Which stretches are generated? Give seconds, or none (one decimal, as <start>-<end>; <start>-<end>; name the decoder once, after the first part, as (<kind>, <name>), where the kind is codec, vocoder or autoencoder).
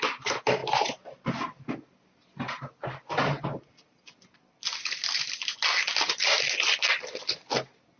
none